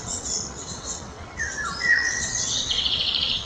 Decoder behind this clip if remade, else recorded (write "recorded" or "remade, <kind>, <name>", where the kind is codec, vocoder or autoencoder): remade, vocoder, WaveNeXt